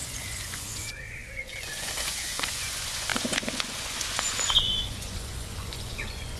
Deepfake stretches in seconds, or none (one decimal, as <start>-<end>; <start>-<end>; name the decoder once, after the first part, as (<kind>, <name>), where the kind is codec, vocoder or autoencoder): 0.0-6.4 (vocoder, Vocos)